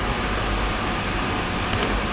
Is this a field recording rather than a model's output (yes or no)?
yes